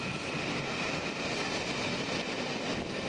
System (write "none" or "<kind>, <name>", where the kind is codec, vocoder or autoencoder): none